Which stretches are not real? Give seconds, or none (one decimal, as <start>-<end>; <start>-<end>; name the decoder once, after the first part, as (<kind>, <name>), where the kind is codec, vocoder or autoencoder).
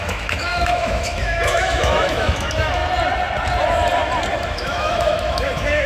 0.0-2.8 (autoencoder, DAC-VAE); 4.5-5.9